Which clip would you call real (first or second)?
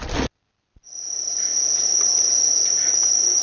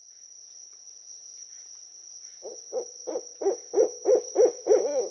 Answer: first